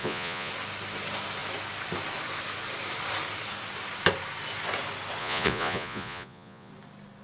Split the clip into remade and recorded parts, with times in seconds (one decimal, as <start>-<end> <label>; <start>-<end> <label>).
0.0-0.5 remade; 0.5-5.2 recorded; 5.2-6.7 remade; 6.7-7.2 recorded